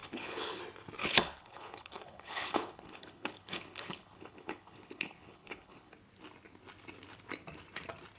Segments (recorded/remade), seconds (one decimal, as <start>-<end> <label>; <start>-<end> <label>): 0.0-0.6 remade; 0.6-1.0 recorded; 1.0-5.9 remade; 5.9-8.2 recorded